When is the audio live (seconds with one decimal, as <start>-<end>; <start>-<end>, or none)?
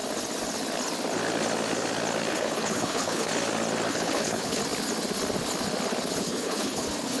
0.0-2.3; 3.3-3.9; 4.6-6.2